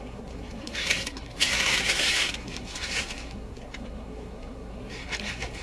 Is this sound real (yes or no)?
no